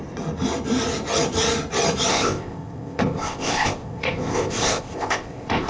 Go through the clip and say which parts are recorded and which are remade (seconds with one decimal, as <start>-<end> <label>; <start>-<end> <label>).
0.0-2.1 recorded; 2.1-5.7 remade